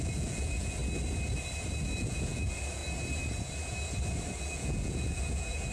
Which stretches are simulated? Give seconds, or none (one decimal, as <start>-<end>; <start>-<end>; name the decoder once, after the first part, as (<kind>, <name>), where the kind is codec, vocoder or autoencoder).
0.0-0.8 (vocoder, Vocos); 1.9-2.8; 4.4-5.7